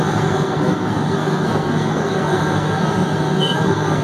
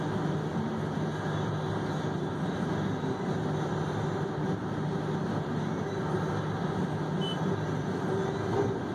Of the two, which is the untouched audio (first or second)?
second